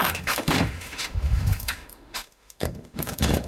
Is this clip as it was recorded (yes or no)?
no